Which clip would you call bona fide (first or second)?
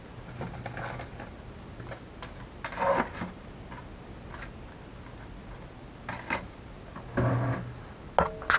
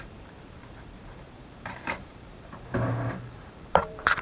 first